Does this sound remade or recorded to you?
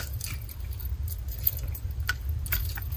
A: recorded